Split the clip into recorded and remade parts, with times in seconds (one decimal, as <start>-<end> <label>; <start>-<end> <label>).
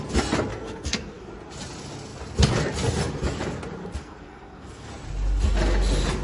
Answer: 0.0-0.5 recorded; 0.5-1.3 remade; 1.3-3.8 recorded; 3.8-4.9 remade; 4.9-6.2 recorded